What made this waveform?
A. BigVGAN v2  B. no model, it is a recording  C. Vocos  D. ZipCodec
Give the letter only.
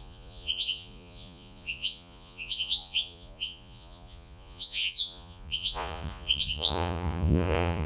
C